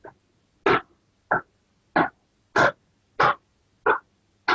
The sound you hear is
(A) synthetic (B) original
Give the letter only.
B